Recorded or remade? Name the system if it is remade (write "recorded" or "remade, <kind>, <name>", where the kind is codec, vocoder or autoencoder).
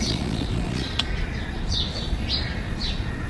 remade, vocoder, Vocos